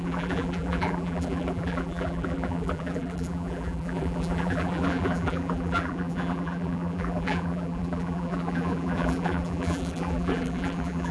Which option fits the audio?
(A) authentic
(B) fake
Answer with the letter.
B